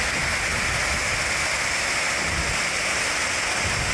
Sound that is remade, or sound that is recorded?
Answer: recorded